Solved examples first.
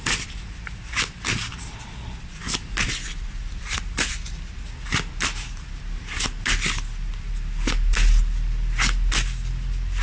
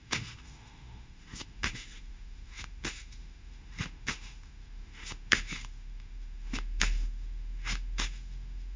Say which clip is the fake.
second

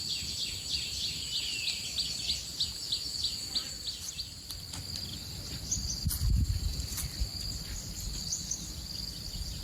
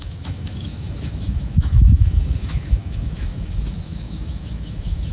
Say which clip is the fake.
second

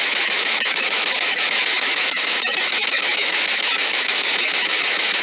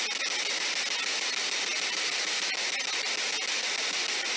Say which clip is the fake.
first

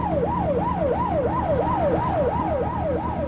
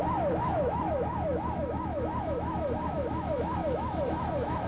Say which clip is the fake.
second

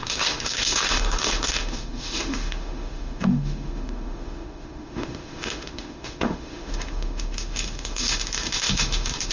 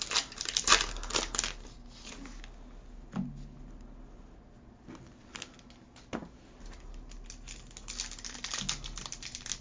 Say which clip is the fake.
first